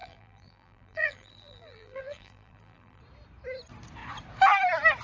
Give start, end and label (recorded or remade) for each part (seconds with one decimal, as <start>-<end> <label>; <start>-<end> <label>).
0.0-3.0 remade; 3.0-5.0 recorded

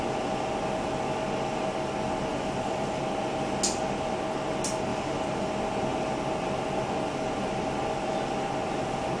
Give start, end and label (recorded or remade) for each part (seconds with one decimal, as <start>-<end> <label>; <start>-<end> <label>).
0.0-2.3 recorded; 2.3-3.0 remade; 3.0-4.9 recorded; 4.9-5.5 remade; 5.5-9.2 recorded

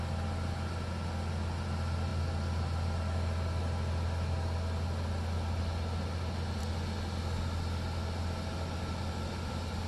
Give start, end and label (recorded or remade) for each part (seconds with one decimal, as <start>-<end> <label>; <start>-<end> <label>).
0.0-9.9 recorded

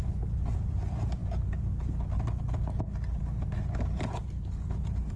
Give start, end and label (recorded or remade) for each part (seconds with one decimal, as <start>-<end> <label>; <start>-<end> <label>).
0.0-5.2 recorded

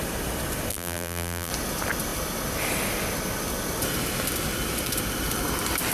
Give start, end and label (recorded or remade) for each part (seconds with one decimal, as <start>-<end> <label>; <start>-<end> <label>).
0.0-0.7 recorded; 0.7-1.5 remade; 1.5-5.9 recorded

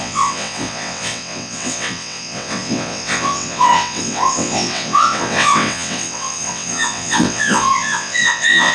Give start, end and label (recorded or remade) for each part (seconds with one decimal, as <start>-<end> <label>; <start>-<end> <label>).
0.0-8.7 remade

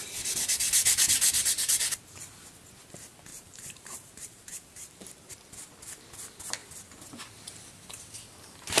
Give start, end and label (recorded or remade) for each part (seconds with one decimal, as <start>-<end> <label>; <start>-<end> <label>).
0.0-3.3 recorded; 3.3-5.3 remade; 5.3-8.8 recorded

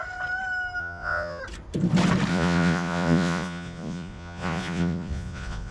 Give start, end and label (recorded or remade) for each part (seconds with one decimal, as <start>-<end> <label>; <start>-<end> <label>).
0.0-0.8 recorded; 0.8-1.4 remade; 1.4-2.3 recorded; 2.3-5.7 remade